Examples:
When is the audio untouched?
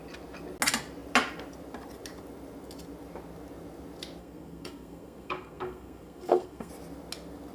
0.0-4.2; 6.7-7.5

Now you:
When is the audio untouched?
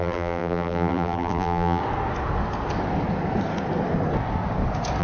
1.8-5.0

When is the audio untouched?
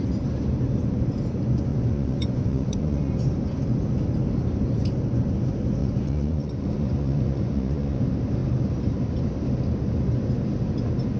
0.0-1.7; 3.1-5.8; 8.0-11.2